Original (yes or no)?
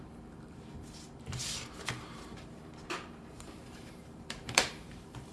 no